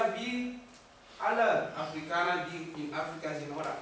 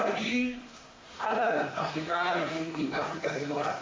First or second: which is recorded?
first